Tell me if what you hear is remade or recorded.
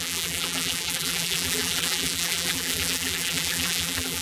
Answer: remade